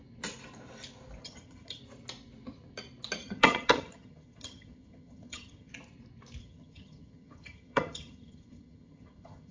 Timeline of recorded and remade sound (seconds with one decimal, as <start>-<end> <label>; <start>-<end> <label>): 0.0-1.2 recorded; 1.2-1.8 remade; 1.8-3.2 recorded; 3.2-5.7 remade; 5.7-6.4 recorded; 6.4-9.5 remade